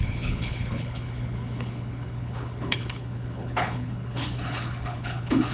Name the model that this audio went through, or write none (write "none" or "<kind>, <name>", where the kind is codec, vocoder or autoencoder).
codec, HILCodec